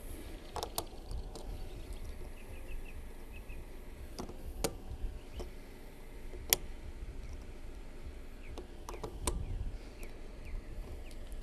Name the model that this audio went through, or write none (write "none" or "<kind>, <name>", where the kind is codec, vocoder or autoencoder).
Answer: none